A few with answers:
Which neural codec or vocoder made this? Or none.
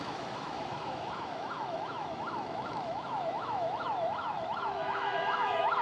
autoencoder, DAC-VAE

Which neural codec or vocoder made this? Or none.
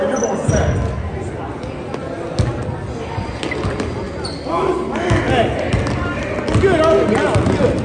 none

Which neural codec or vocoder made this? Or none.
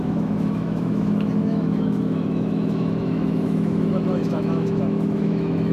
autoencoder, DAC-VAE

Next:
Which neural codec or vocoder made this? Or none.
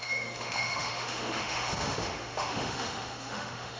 autoencoder, DAC-VAE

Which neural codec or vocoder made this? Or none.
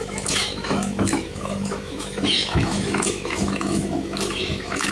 autoencoder, DAC-VAE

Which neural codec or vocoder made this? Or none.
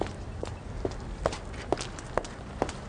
none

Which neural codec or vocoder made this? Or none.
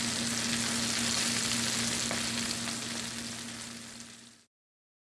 none